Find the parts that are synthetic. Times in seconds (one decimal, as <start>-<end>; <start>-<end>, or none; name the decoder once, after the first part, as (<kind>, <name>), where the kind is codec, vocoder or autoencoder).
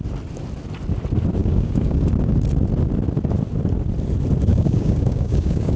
1.4-2.1 (codec, DAC); 4.5-5.8